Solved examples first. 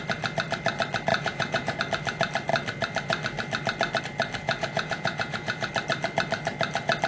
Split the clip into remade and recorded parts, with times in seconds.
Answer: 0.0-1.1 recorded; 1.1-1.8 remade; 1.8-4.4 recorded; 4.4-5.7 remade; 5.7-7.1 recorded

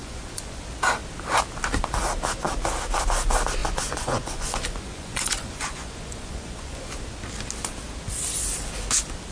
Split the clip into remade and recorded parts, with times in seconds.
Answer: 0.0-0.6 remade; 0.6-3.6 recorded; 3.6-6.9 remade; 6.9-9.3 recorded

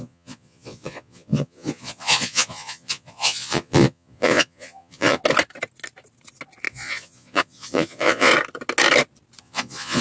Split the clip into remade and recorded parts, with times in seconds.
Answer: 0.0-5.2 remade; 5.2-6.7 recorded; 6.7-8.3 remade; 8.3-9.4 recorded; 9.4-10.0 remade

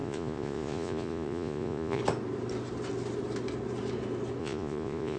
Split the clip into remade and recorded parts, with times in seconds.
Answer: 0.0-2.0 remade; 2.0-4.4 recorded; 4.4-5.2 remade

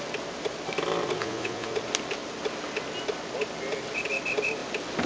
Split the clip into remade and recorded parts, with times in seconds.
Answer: 0.0-1.2 recorded; 1.2-1.7 remade; 1.7-5.1 recorded

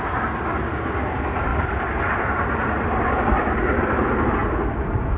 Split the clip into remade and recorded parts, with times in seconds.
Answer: 0.0-5.2 recorded